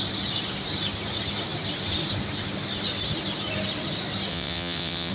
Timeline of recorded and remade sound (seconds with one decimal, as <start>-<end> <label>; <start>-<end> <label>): 0.0-4.3 recorded; 4.3-5.1 remade